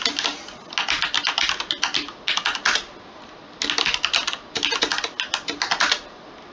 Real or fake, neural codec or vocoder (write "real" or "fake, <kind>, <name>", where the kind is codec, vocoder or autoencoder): real